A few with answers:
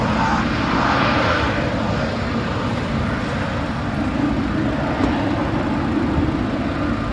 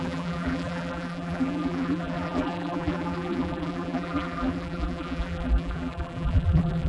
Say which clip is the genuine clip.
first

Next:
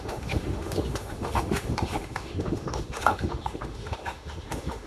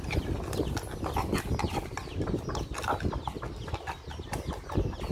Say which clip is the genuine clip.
second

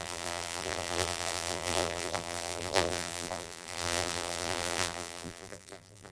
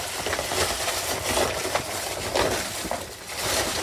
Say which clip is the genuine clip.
second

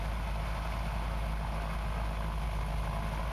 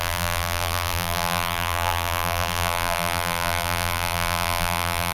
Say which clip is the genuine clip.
first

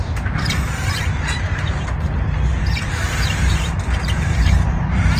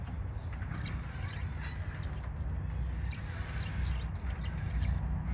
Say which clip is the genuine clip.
second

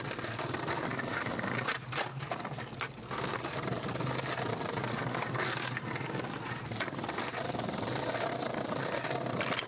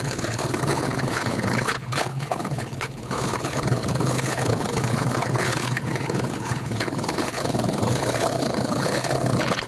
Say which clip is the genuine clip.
first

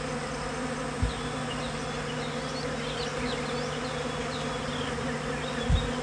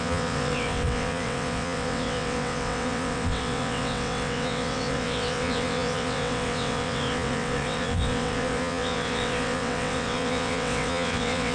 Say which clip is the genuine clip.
first